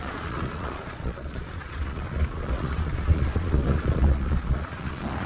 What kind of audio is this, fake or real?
fake